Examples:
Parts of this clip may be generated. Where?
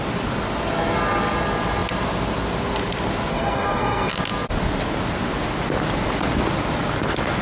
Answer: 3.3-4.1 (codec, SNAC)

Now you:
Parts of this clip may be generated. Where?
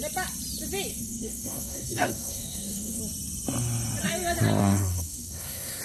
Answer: 0.9-3.0 (codec, SNAC); 4.6-5.8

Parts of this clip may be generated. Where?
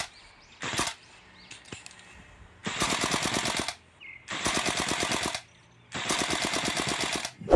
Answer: none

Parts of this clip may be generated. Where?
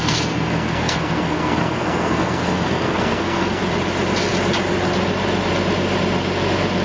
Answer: 0.0-3.6 (codec, SNAC)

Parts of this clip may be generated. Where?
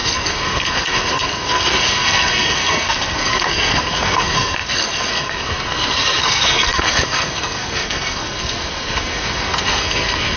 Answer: 0.0-10.4 (codec, SNAC)